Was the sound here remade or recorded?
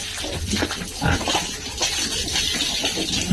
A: recorded